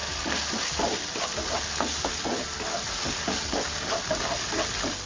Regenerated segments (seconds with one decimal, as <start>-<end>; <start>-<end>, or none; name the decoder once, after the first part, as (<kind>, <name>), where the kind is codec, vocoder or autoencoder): none